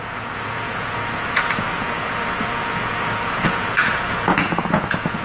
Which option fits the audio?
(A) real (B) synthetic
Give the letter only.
B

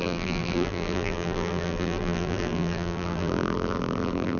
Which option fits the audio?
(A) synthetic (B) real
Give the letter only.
A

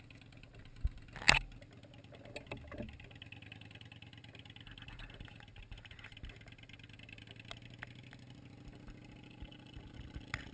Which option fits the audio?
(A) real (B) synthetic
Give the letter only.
A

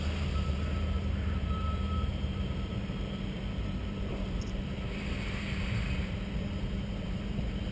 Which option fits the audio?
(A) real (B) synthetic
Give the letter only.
B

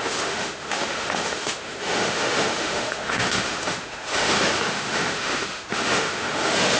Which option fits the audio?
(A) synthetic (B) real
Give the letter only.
A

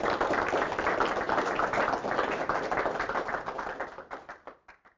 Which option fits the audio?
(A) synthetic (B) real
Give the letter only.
B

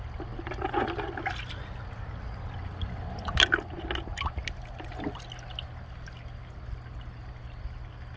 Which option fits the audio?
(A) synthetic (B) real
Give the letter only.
B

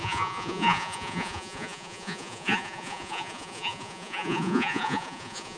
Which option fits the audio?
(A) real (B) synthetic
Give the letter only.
B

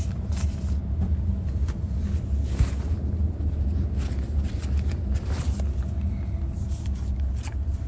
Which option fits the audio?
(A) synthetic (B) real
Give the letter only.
B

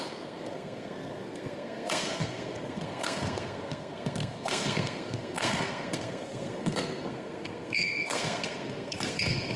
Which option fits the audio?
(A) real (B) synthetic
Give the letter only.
B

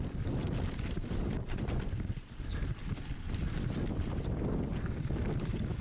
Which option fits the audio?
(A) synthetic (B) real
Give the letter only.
B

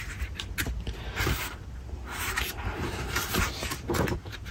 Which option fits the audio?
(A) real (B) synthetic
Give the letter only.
B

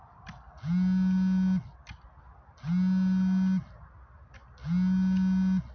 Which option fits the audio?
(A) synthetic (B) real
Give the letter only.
B